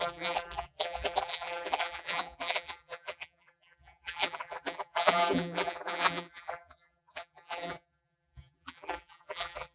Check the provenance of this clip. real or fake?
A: fake